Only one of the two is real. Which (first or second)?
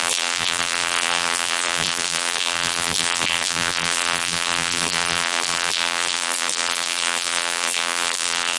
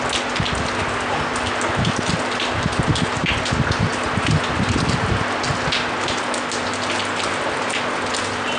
second